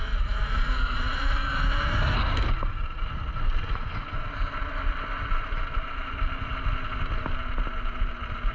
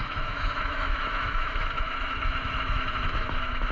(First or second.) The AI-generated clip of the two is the second